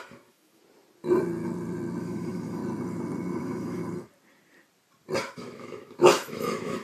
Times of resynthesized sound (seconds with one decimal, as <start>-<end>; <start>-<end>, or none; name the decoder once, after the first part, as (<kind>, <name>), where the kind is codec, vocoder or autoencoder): 0.0-0.6 (autoencoder, DAC-VAE); 2.0-2.6; 3.4-3.8; 5.3-6.8